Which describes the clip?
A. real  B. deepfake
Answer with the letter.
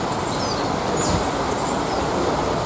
A